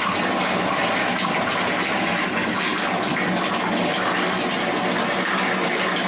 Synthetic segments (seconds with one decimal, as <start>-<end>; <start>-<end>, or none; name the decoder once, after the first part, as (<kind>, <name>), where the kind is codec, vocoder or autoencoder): none